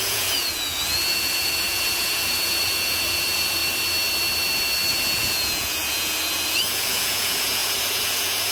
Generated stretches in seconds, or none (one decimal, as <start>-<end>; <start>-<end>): 0.0-3.6; 4.9-8.5